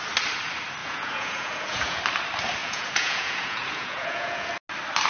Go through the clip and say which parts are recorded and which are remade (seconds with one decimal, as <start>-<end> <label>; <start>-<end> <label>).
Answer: 0.0-0.8 recorded; 0.8-2.0 remade; 2.0-2.6 recorded; 2.6-4.5 remade; 4.5-5.1 recorded